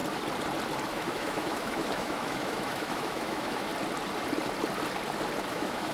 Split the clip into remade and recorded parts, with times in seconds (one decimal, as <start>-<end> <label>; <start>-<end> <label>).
0.0-0.9 recorded; 0.9-3.7 remade; 3.7-5.5 recorded; 5.5-5.9 remade